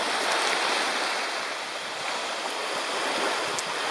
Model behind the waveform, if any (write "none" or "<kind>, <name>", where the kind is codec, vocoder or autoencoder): none